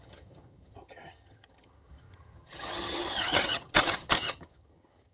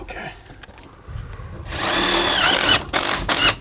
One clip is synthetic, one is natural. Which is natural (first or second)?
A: second